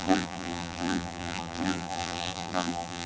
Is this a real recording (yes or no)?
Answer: no